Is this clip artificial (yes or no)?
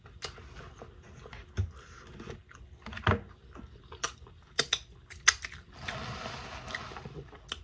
no